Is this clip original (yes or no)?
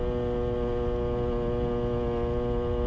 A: yes